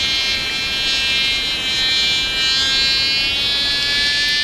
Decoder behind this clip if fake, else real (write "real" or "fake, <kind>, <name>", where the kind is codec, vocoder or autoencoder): real